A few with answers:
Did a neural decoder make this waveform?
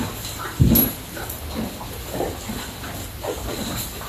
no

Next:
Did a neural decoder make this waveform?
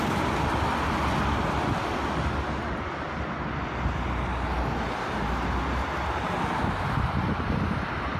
no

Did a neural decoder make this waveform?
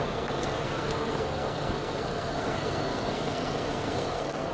yes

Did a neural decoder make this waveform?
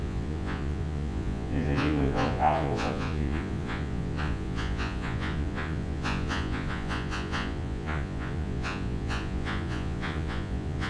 yes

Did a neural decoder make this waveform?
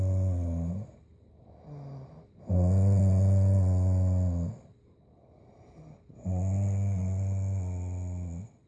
no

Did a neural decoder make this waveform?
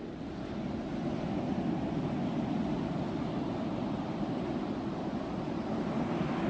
no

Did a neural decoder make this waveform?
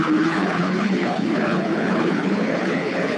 yes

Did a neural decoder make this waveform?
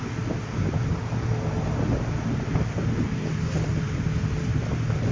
no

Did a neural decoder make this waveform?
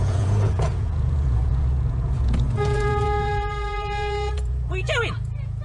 yes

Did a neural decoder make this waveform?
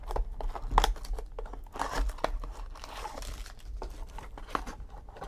no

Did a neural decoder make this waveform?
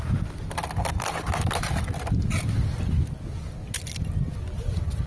no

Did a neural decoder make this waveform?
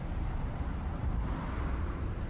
yes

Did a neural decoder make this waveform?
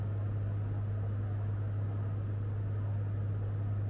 no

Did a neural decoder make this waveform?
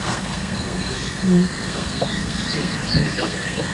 yes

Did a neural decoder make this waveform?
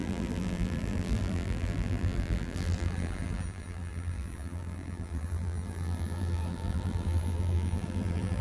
yes